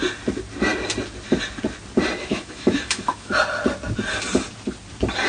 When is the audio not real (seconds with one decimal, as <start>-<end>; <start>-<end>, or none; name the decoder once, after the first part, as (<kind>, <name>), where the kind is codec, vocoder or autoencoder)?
2.3-3.3 (autoencoder, DAC-VAE)